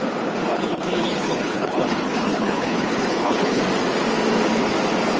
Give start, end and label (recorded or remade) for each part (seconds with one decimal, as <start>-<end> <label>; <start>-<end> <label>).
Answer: 0.0-0.5 recorded; 0.5-3.6 remade; 3.6-5.2 recorded